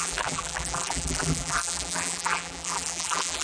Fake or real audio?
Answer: fake